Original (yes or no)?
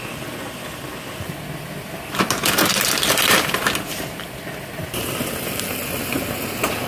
yes